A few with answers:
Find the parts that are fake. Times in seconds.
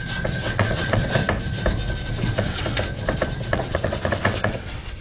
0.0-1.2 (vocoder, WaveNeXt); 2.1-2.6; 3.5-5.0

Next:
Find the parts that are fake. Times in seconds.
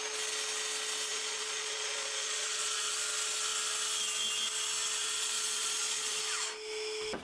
1.1-2.9 (vocoder, Vocos); 5.0-6.2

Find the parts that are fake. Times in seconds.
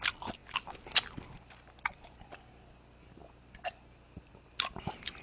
none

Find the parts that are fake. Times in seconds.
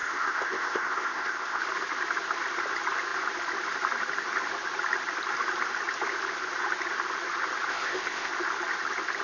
0.0-1.6 (codec, ZipCodec); 7.7-8.3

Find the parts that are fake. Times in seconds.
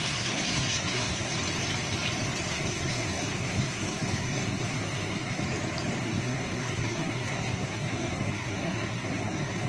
0.0-1.3 (codec, SNAC); 2.5-5.4; 6.0-9.7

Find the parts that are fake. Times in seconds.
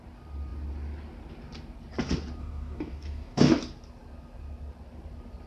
2.4-3.5 (codec, DAC)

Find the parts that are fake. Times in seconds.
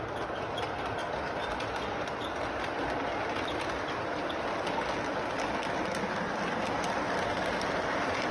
none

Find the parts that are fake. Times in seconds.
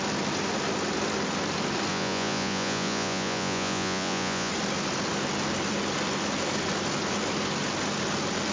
1.9-4.5 (vocoder, Vocos)